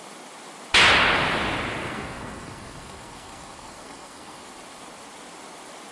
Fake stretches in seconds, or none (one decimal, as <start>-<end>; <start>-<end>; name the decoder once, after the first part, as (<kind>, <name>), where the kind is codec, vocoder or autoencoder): 1.8-4.5 (codec, SNAC)